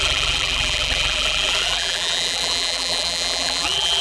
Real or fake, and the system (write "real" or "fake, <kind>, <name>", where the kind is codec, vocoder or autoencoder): fake, vocoder, BigVGAN v2